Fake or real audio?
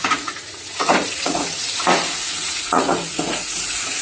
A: fake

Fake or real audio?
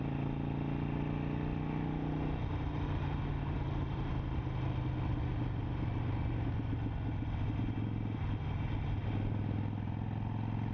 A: real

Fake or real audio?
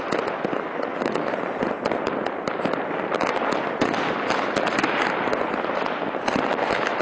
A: real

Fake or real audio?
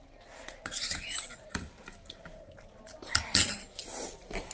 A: real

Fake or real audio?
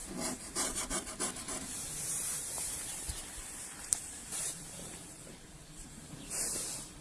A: fake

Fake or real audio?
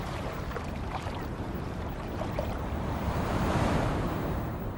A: fake